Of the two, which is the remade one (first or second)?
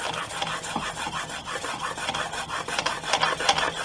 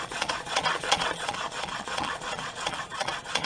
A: second